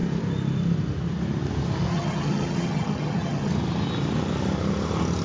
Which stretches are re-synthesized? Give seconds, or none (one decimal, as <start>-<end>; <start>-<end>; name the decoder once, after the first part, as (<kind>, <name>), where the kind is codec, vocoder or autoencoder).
1.9-3.5 (vocoder, HiFi-GAN)